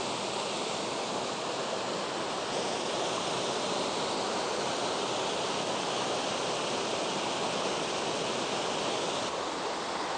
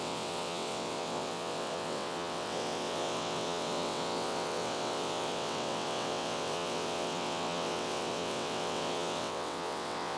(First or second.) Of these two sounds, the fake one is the second